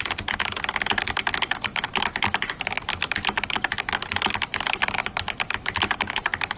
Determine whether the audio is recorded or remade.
recorded